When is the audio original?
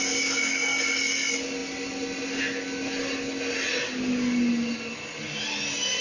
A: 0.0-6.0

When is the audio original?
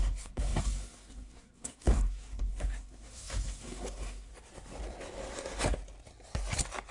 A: 4.3-6.9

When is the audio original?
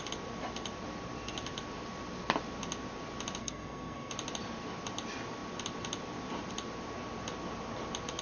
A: 0.0-3.4; 4.1-8.2